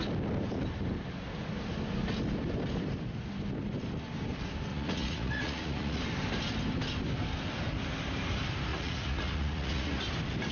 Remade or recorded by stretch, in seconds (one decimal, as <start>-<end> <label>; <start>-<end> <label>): 0.0-4.7 recorded; 4.7-6.0 remade; 6.0-8.7 recorded; 8.7-10.0 remade; 10.0-10.5 recorded